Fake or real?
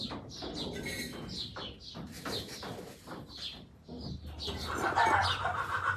real